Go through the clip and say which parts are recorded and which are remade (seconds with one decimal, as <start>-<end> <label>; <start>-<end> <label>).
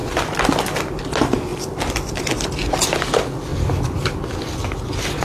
0.0-1.0 remade; 1.0-3.5 recorded; 3.5-4.1 remade; 4.1-5.2 recorded